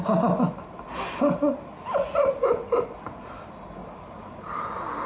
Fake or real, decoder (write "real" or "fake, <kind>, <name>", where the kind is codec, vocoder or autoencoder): real